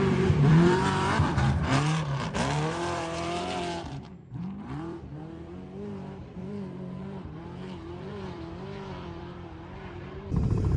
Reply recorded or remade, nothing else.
remade